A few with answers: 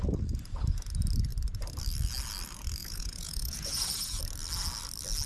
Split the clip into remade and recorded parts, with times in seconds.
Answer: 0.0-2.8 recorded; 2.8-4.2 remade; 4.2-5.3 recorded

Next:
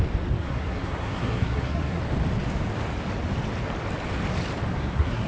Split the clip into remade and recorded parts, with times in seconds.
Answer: 0.0-0.4 recorded; 0.4-2.0 remade; 2.0-4.7 recorded; 4.7-5.3 remade